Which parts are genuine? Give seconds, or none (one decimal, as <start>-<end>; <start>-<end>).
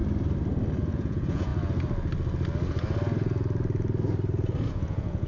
0.0-0.8; 1.5-4.7